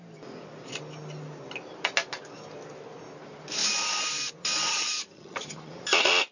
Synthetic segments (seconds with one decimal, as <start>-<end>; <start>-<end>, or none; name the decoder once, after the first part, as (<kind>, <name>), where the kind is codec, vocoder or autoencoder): 4.7-5.7 (vocoder, HiFi-GAN)